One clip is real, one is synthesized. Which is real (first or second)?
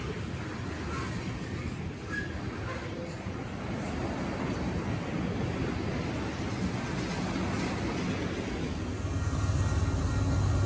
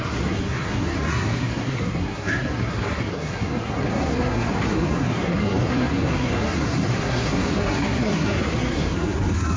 first